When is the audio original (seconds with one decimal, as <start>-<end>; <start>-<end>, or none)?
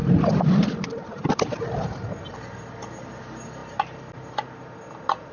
0.0-5.3